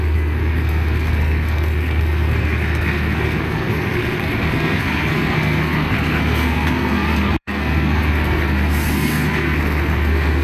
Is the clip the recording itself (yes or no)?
no